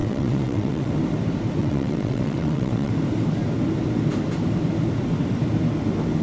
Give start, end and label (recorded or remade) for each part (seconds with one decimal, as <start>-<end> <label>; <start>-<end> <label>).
0.0-0.9 remade; 0.9-1.6 recorded; 1.6-2.9 remade; 2.9-6.2 recorded